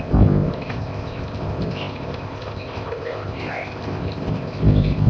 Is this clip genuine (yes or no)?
no